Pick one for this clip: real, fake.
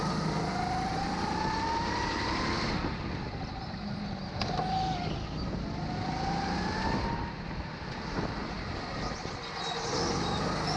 real